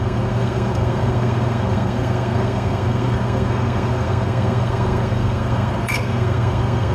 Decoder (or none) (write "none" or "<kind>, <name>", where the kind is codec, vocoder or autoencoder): codec, SNAC